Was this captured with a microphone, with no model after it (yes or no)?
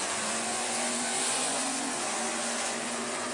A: no